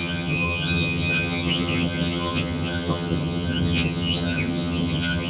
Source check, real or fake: fake